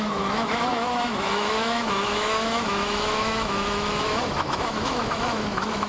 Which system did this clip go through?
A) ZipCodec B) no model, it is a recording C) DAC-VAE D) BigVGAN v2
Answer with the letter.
C